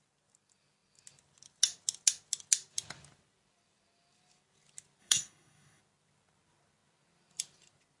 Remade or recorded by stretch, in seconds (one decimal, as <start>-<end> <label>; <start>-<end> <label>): 0.0-5.0 recorded; 5.0-5.8 remade; 5.8-8.0 recorded